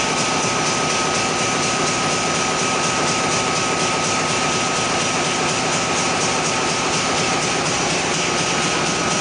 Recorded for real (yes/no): yes